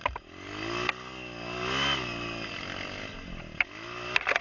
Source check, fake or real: real